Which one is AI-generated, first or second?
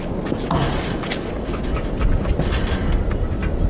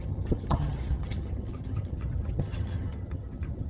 second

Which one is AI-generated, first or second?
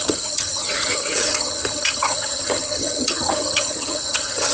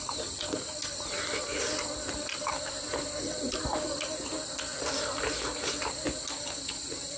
first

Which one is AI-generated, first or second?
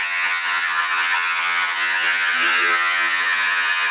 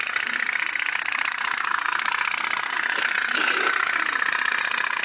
first